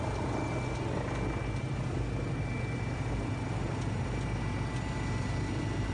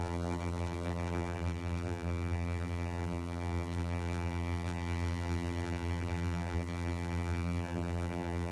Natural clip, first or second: first